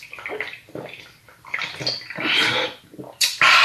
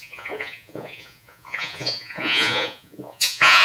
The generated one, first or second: second